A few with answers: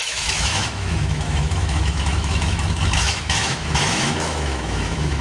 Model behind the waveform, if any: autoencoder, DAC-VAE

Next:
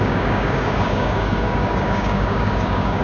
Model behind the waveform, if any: codec, DAC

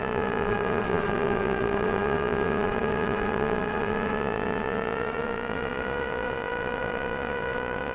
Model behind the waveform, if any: vocoder, Vocos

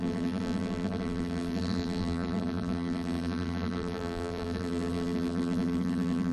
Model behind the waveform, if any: vocoder, BigVGAN v2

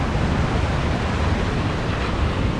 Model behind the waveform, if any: none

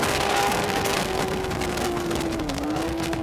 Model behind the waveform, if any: codec, SNAC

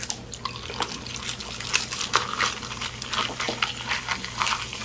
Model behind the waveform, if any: none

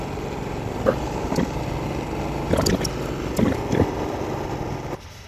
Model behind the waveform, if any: none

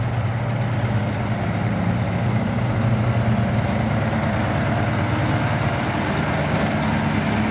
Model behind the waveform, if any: none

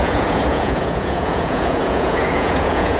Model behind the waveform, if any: vocoder, Vocos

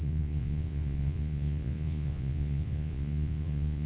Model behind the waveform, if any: vocoder, Vocos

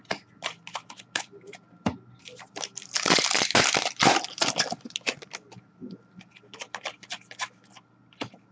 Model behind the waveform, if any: none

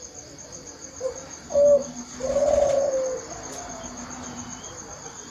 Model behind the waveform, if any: none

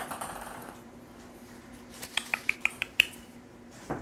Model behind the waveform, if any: vocoder, BigVGAN v2